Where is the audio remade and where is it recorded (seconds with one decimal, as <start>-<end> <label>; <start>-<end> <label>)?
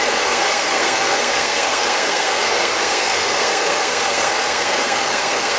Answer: 0.0-5.6 remade